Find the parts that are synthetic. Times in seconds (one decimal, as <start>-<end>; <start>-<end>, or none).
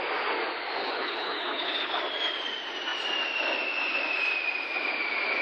0.8-2.0